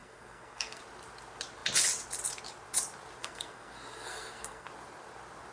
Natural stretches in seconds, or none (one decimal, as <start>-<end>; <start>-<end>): 0.8-3.2; 4.7-5.5